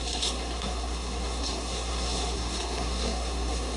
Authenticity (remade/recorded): remade